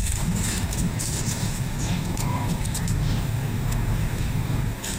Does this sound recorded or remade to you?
remade